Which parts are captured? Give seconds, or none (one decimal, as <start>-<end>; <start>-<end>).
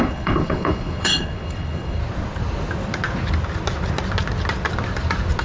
2.0-5.4